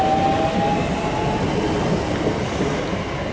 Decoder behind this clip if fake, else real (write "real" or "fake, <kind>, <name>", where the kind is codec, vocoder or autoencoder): real